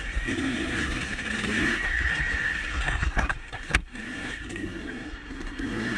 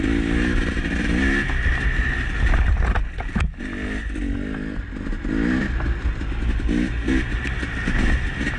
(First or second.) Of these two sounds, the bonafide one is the second